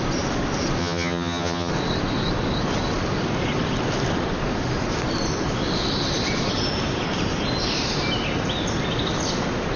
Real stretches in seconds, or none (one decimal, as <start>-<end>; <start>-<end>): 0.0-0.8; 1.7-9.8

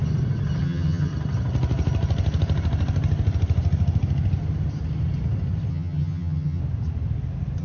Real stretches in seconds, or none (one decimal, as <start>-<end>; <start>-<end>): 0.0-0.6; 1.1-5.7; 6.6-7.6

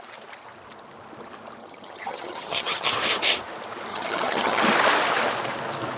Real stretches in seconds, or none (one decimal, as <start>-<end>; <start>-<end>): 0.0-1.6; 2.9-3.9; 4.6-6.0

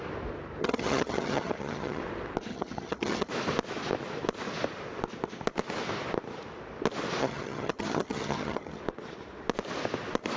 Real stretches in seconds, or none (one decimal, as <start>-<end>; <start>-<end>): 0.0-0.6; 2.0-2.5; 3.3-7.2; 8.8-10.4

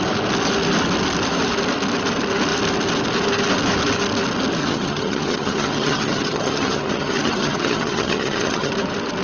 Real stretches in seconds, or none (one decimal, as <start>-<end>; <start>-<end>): 0.0-4.6; 8.7-9.2

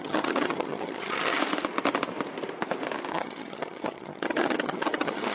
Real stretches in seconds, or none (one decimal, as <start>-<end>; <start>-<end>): 1.4-3.1

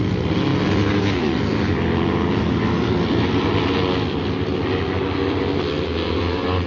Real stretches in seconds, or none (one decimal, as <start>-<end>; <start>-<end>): 0.0-6.7